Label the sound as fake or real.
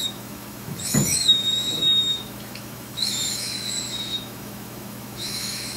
fake